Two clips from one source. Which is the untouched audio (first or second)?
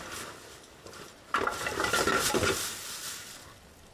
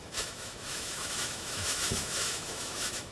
first